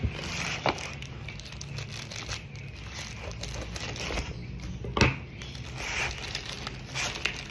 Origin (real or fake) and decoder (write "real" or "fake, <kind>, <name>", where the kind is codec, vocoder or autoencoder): real